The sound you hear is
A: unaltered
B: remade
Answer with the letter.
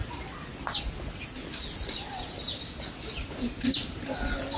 A